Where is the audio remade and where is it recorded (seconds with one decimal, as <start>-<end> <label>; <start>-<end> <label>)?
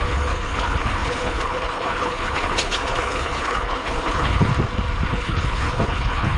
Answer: 0.0-4.5 remade; 4.5-5.1 recorded; 5.1-6.4 remade